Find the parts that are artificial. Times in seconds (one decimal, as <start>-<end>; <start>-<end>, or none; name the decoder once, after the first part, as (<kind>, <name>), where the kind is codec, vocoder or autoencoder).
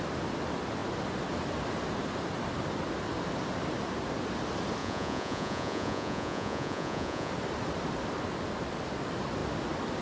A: 4.8-7.3 (vocoder, Vocos)